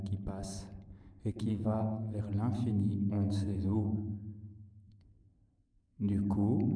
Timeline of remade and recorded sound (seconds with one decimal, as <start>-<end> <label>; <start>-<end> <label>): 0.0-1.5 recorded; 1.5-2.2 remade; 2.2-2.7 recorded; 2.7-6.0 remade; 6.0-6.8 recorded

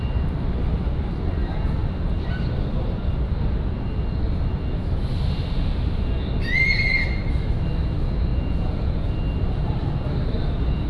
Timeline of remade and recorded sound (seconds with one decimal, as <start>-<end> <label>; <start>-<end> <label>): 0.0-8.3 recorded; 8.3-9.1 remade; 9.1-10.9 recorded

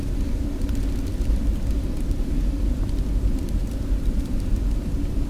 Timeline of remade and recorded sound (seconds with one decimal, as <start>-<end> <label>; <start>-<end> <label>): 0.0-5.3 remade

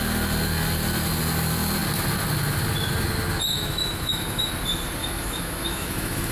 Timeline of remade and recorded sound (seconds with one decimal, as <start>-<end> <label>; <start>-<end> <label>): 0.0-3.5 recorded; 3.5-4.5 remade; 4.5-5.0 recorded; 5.0-6.3 remade

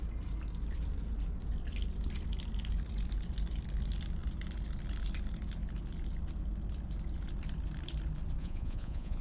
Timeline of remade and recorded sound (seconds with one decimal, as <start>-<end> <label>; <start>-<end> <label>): 0.0-8.4 recorded; 8.4-9.2 remade

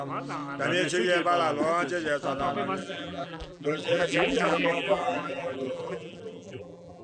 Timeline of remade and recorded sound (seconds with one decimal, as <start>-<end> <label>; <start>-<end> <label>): 0.0-2.8 recorded; 2.8-7.0 remade